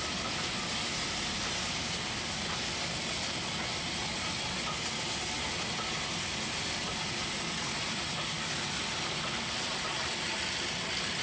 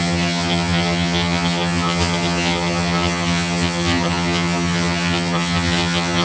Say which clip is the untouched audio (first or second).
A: first